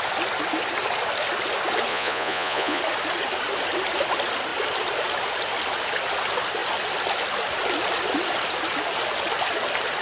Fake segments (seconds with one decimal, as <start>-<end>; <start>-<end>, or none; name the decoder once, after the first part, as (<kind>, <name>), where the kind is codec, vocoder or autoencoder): 1.9-2.8 (vocoder, Vocos)